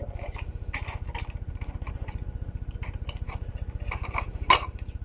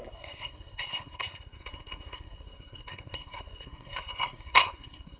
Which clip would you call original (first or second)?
first